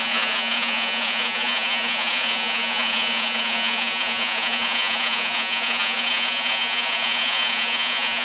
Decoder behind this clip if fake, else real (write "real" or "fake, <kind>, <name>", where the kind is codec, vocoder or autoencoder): fake, vocoder, Vocos